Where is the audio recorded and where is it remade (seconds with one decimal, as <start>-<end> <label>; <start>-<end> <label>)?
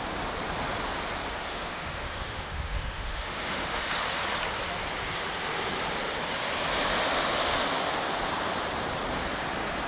0.0-1.5 recorded; 1.5-3.9 remade; 3.9-9.9 recorded